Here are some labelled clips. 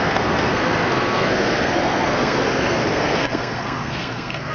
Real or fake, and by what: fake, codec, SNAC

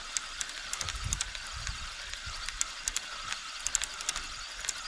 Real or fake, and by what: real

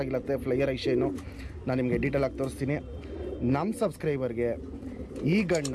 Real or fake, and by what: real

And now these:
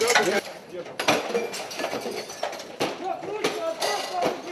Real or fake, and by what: real